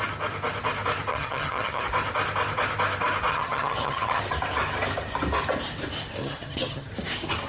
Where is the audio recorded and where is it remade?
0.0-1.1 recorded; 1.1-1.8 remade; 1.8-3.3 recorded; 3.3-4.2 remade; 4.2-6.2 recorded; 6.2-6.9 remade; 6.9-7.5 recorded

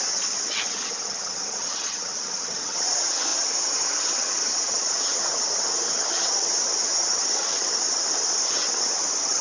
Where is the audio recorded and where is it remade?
0.0-9.4 remade